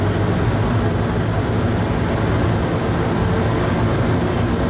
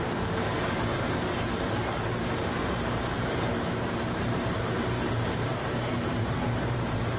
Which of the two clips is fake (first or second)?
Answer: second